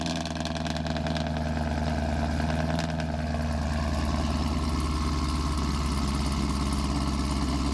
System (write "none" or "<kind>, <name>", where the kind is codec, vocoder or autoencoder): none